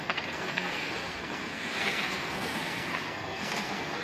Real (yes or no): no